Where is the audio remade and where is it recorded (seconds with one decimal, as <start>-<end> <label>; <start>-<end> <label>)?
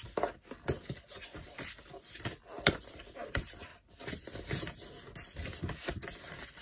0.0-6.6 recorded